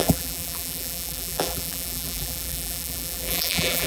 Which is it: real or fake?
fake